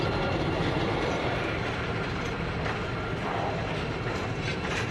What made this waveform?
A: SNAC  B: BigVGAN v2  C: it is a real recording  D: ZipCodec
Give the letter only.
B